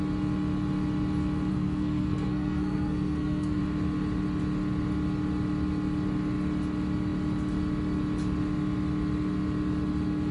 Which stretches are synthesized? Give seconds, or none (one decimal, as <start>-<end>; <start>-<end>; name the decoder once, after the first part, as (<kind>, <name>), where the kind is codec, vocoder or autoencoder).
1.5-3.6 (codec, SNAC)